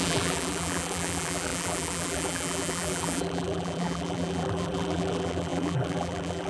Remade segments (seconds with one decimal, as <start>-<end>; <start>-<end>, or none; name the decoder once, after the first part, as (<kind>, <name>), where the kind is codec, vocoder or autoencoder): 0.0-6.5 (vocoder, BigVGAN v2)